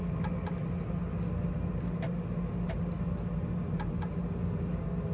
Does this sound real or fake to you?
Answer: real